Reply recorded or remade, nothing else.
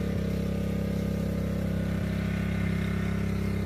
recorded